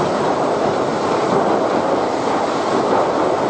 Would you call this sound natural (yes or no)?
yes